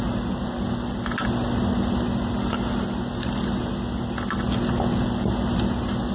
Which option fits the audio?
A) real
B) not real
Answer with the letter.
A